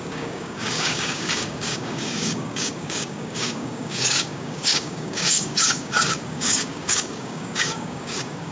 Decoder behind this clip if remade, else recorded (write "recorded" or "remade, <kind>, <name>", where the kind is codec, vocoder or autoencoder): remade, codec, DAC